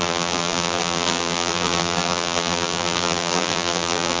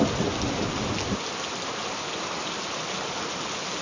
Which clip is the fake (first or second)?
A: first